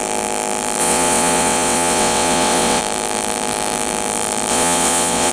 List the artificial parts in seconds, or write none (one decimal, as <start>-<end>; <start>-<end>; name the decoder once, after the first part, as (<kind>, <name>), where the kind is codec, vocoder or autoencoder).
0.8-2.8 (vocoder, WaveNeXt); 4.5-5.3